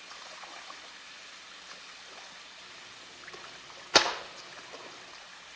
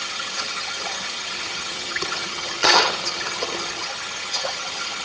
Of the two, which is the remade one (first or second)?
second